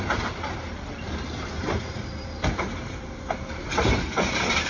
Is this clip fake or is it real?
fake